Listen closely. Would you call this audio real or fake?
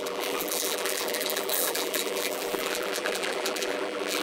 fake